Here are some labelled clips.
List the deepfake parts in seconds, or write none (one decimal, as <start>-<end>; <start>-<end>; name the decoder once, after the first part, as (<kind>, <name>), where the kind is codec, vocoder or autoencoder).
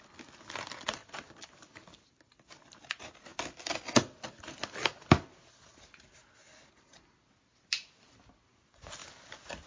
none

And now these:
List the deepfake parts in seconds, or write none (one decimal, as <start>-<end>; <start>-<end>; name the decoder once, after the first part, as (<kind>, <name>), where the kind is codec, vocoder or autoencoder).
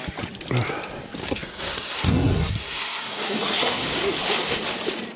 1.2-3.8 (codec, SNAC)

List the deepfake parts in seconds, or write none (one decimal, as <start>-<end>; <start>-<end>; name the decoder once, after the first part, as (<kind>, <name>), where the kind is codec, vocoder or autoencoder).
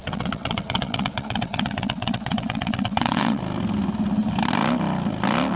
0.0-3.4 (vocoder, WaveNeXt)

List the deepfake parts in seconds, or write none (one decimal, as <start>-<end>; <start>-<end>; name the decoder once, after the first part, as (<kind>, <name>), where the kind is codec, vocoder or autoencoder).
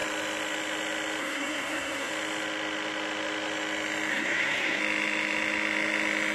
1.2-2.1 (codec, SNAC); 4.1-4.8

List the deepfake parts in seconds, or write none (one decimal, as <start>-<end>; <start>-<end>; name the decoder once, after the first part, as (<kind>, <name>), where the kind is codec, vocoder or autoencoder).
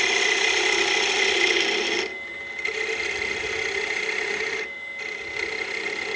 none